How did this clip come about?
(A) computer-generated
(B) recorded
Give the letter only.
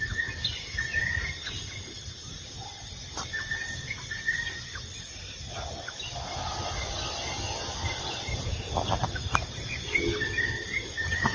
B